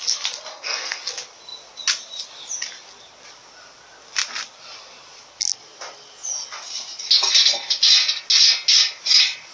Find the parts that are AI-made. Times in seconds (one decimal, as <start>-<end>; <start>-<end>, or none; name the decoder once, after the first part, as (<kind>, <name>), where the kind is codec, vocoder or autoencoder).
0.5-1.0 (codec, SNAC)